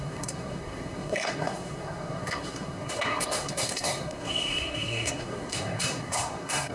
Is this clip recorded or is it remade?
remade